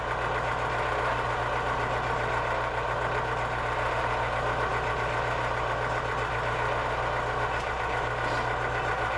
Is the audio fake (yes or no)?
no